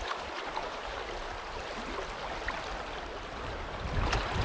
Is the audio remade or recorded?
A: recorded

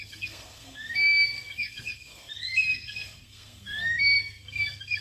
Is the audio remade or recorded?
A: remade